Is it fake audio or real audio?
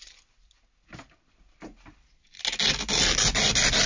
real